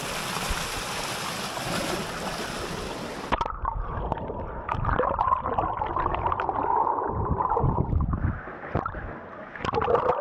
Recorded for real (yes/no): yes